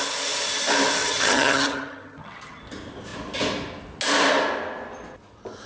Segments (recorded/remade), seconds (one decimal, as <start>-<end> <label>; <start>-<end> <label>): 0.0-1.0 recorded; 1.0-2.6 remade; 2.6-5.7 recorded